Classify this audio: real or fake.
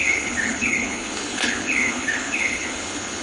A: fake